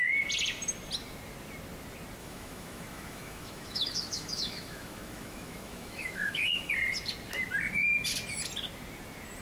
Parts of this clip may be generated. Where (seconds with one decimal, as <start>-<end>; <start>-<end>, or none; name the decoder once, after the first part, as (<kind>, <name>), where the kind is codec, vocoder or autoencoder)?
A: 2.2-6.7 (autoencoder, DAC-VAE)